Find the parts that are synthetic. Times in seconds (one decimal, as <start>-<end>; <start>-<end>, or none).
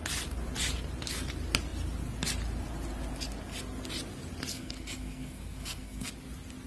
4.5-6.1